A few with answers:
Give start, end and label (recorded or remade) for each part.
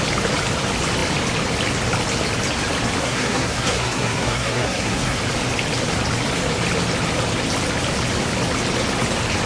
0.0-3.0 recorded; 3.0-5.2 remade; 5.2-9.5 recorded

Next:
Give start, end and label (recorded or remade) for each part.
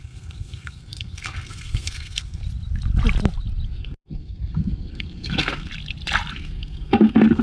0.0-2.4 remade; 2.4-3.7 recorded; 3.7-5.7 remade; 5.7-6.3 recorded; 6.3-7.4 remade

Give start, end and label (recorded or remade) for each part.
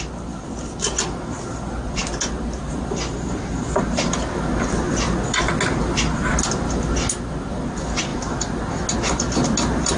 0.0-10.0 recorded